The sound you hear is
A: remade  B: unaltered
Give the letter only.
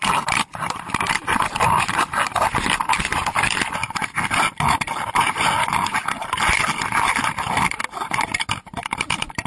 B